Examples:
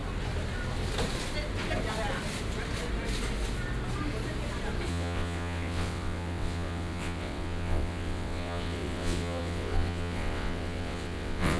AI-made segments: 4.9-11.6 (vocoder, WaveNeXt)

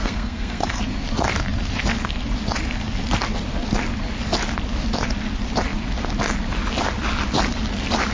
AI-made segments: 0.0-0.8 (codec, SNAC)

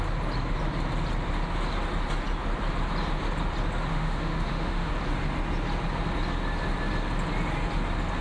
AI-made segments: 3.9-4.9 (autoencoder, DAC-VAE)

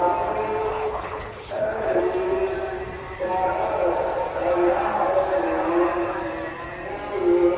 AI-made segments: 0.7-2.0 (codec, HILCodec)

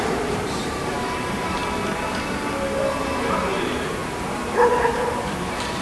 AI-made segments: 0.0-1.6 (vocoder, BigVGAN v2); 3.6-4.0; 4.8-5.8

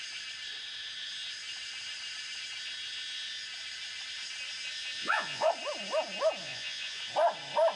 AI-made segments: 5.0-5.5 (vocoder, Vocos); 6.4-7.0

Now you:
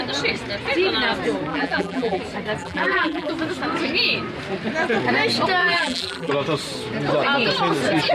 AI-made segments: 1.5-2.2 (vocoder, BigVGAN v2); 2.6-3.3; 5.6-6.3